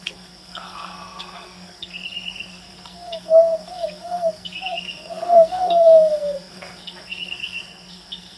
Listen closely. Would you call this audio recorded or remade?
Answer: remade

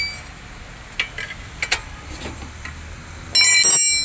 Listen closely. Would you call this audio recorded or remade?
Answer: recorded